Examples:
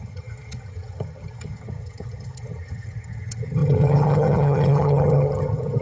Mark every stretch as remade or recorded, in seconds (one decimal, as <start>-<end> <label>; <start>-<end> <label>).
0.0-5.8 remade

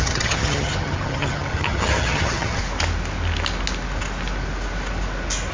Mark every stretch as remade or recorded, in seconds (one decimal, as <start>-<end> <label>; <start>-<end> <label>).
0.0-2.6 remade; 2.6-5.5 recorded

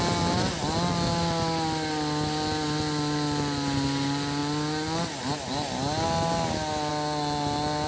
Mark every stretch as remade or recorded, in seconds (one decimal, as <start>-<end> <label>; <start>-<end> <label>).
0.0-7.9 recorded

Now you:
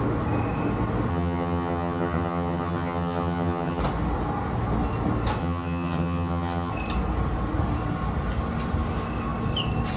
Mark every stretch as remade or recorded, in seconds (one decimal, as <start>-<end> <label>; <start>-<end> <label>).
0.0-1.1 recorded; 1.1-3.8 remade; 3.8-5.4 recorded; 5.4-6.7 remade; 6.7-10.0 recorded